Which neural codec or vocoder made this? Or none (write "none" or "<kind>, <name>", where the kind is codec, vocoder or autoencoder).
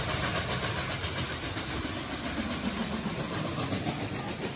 none